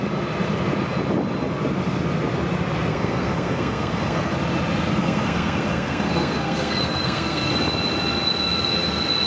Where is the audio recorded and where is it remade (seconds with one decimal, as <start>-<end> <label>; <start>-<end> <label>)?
0.0-2.9 recorded; 2.9-4.3 remade; 4.3-5.0 recorded; 5.0-7.5 remade; 7.5-9.3 recorded